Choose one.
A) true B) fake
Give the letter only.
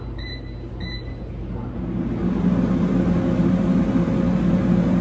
A